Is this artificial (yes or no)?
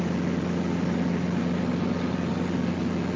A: no